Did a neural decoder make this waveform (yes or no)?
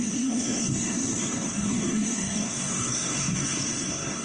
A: yes